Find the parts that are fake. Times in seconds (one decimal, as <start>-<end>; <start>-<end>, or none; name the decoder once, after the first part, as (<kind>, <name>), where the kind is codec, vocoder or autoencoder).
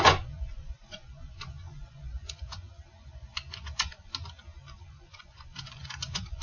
0.0-4.1 (vocoder, Vocos); 4.8-6.4